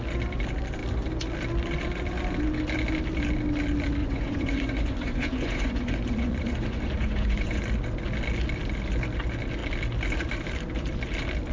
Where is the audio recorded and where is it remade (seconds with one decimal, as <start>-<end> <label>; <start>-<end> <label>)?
0.0-4.0 recorded; 4.0-7.6 remade; 7.6-11.5 recorded